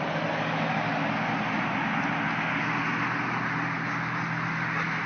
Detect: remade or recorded recorded